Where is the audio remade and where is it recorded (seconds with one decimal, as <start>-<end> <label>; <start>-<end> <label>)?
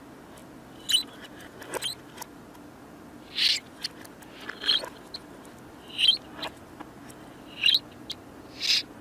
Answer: 0.0-9.0 recorded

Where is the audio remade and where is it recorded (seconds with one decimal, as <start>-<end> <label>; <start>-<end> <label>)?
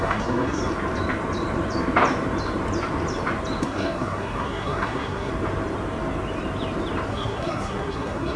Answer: 0.0-0.6 remade; 0.6-3.6 recorded; 3.6-5.3 remade; 5.3-7.1 recorded; 7.1-8.4 remade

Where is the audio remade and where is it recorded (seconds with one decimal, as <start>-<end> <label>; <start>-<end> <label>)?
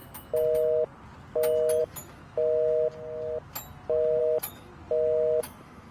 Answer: 0.0-1.8 recorded; 1.8-2.2 remade; 2.2-4.2 recorded; 4.2-4.7 remade; 4.7-5.4 recorded; 5.4-5.9 remade